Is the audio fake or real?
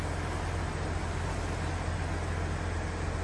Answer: real